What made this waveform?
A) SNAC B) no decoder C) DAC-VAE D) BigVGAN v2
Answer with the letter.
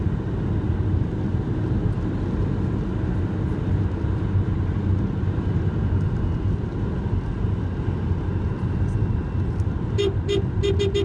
B